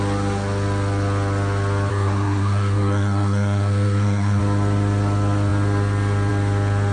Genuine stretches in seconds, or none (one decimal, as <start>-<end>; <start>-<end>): 0.0-1.9; 4.4-6.9